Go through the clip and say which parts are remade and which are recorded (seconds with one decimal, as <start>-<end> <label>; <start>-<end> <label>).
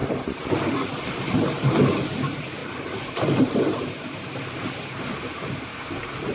0.0-6.3 recorded